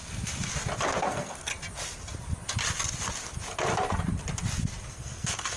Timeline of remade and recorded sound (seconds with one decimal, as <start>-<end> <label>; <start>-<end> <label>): 0.0-1.0 recorded; 1.0-1.5 remade; 1.5-4.9 recorded; 4.9-5.6 remade